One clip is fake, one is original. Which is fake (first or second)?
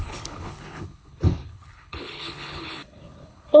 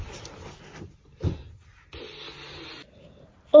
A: first